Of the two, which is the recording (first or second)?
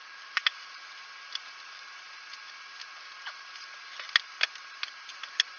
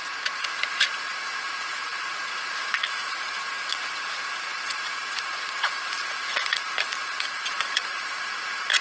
first